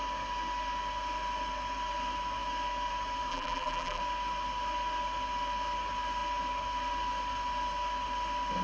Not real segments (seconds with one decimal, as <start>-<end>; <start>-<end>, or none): 3.3-4.0